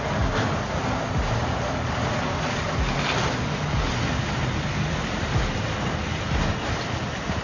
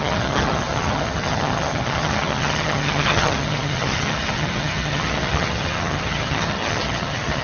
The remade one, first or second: second